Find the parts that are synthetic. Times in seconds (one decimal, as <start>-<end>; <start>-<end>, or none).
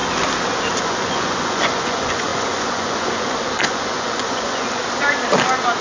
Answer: 0.8-4.8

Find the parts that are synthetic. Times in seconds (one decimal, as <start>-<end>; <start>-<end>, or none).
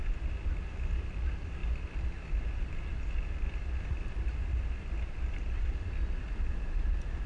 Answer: none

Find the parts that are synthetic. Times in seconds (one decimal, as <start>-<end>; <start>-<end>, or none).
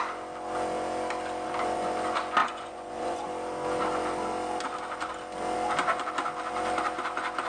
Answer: 2.4-3.3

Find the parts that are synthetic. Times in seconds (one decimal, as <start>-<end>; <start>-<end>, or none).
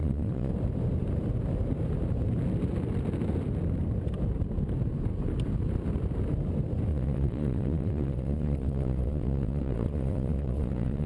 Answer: 0.0-0.5; 6.9-11.1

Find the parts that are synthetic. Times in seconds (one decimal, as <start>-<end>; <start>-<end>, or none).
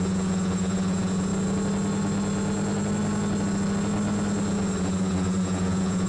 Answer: 0.0-1.3; 4.8-6.1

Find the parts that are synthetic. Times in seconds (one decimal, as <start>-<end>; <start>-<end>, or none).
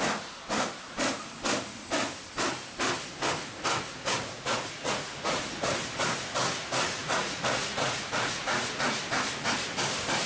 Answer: 4.3-5.4; 7.0-9.0